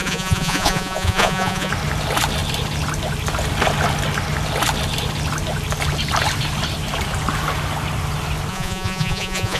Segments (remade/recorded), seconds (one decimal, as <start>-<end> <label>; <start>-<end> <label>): 0.0-1.7 remade; 1.7-8.5 recorded; 8.5-9.6 remade